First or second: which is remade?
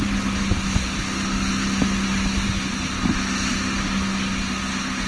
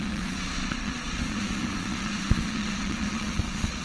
second